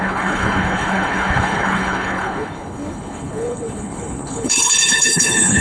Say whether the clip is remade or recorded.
remade